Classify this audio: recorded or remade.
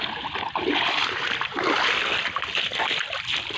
recorded